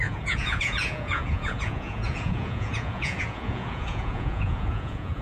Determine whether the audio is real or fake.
fake